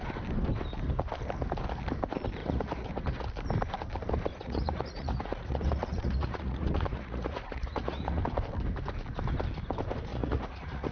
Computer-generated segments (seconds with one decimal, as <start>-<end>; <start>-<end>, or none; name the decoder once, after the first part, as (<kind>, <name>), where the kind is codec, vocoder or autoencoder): 2.4-2.9 (vocoder, Vocos); 4.3-8.2; 10.1-10.9